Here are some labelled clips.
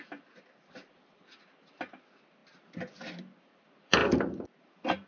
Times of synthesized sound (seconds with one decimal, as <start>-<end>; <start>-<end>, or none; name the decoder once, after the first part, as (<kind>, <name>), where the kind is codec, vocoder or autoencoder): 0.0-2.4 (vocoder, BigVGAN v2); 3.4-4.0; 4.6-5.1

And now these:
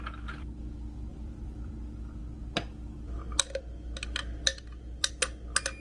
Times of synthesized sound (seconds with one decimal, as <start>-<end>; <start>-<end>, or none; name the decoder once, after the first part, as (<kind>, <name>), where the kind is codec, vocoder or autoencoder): 1.1-1.7 (vocoder, BigVGAN v2); 4.5-5.1

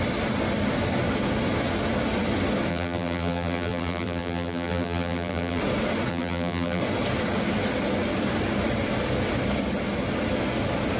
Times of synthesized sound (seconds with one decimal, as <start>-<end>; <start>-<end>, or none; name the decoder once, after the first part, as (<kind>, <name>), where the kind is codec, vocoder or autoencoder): 2.7-5.6 (vocoder, BigVGAN v2); 6.1-6.8